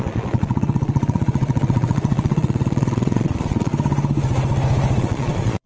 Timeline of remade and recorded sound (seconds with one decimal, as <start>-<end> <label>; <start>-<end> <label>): 0.0-3.7 remade; 3.7-5.0 recorded; 5.0-5.7 remade